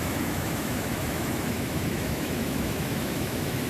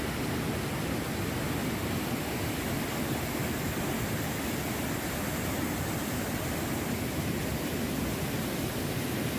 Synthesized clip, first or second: first